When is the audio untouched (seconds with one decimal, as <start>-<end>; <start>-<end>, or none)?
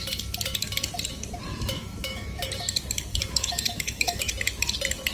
0.0-1.5; 2.5-3.1; 4.3-5.1